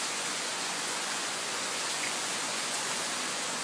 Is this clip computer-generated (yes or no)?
yes